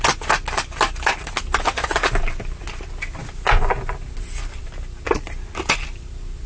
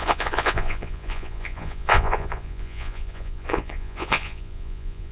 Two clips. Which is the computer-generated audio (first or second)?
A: second